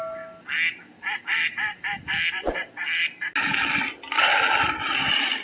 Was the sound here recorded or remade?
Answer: recorded